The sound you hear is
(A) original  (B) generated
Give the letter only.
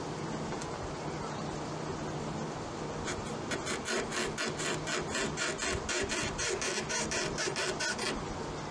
A